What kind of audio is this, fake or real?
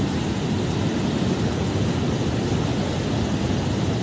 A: real